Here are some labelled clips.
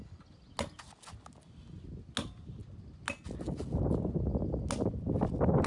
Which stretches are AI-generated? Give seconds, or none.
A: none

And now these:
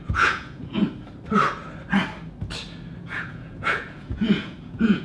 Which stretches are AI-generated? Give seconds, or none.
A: 0.0-0.8 (vocoder, Vocos); 3.0-5.0